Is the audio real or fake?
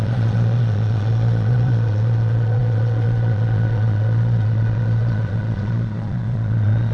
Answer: fake